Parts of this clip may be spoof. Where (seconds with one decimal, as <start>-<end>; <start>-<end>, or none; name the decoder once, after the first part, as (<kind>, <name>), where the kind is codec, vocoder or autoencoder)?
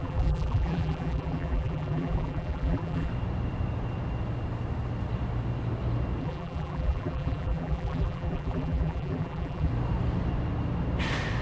0.0-3.1 (vocoder, BigVGAN v2); 6.2-9.7